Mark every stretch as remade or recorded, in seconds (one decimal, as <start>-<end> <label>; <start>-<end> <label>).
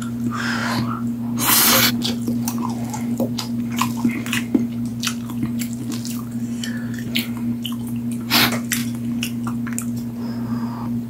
0.0-11.1 recorded